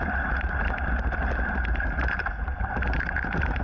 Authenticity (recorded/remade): remade